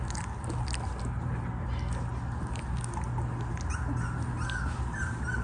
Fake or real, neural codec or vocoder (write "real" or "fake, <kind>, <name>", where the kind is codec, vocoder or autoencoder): real